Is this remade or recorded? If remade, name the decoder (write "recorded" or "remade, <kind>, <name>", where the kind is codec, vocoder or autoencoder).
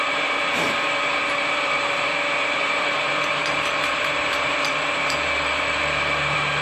remade, vocoder, BigVGAN v2